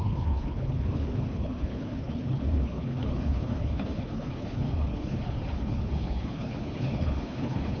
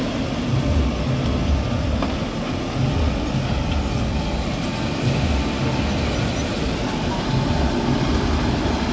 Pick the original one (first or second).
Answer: second